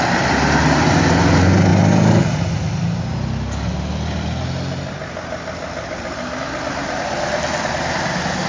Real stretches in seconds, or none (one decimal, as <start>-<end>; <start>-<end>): 0.0-8.5